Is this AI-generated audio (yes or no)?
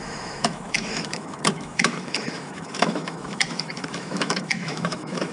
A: yes